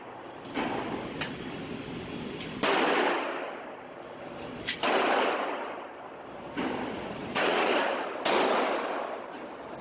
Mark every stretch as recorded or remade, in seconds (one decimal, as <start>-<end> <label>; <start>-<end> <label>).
0.0-7.2 recorded; 7.2-7.7 remade; 7.7-9.8 recorded